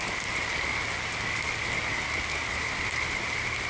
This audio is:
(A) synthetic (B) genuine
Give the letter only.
B